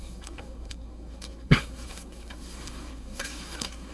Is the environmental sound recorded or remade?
remade